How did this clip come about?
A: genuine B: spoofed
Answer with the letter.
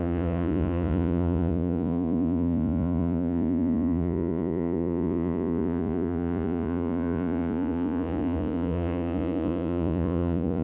B